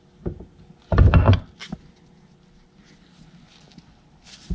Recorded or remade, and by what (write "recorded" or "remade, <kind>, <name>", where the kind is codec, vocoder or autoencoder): recorded